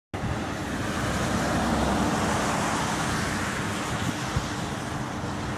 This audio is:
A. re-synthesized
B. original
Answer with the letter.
B